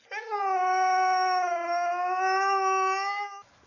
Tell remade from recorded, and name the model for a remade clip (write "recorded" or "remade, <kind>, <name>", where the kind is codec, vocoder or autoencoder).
recorded